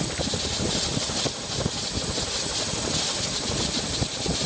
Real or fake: real